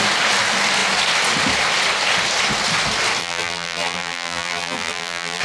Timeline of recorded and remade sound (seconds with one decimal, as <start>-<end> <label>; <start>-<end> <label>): 0.0-3.2 recorded; 3.2-5.4 remade